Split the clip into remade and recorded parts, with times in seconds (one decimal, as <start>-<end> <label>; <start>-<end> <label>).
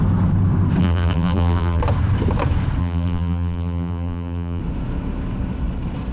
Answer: 0.0-0.8 recorded; 0.8-1.8 remade; 1.8-2.8 recorded; 2.8-4.6 remade; 4.6-6.1 recorded